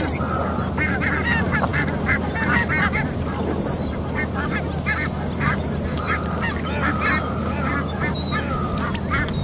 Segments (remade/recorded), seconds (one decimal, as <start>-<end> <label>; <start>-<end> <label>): 0.0-9.4 recorded